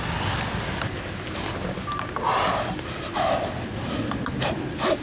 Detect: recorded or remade recorded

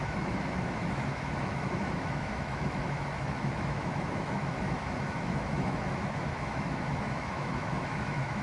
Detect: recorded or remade remade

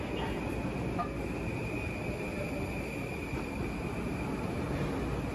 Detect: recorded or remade recorded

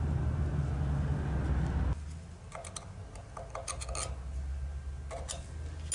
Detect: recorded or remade recorded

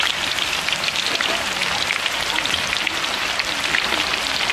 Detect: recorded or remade recorded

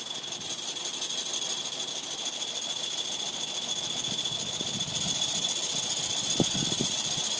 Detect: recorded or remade recorded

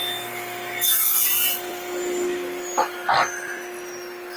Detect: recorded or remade recorded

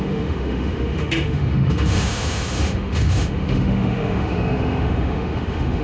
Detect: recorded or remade remade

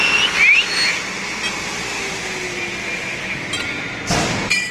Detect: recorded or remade recorded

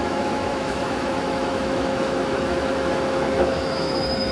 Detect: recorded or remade remade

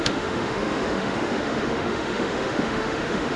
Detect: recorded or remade remade